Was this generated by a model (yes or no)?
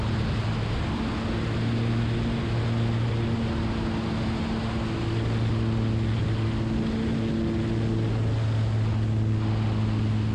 no